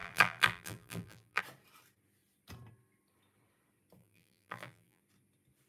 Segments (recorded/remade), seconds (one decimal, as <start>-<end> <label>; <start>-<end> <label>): 0.0-1.4 remade; 1.4-4.0 recorded; 4.0-5.0 remade; 5.0-5.7 recorded